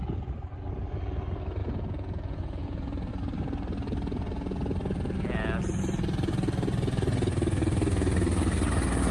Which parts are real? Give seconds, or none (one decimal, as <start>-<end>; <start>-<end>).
0.0-1.6; 3.1-9.1